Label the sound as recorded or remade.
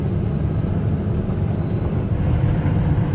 remade